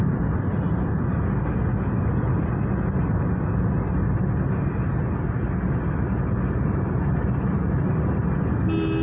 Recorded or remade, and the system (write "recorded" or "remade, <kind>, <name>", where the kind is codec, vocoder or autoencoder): recorded